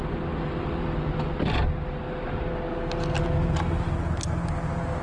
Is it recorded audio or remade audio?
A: recorded